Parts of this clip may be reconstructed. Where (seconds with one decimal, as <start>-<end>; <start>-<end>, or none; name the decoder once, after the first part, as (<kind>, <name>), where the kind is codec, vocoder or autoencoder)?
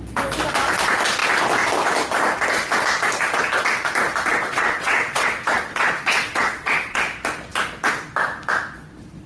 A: 4.3-7.0 (vocoder, WaveNeXt)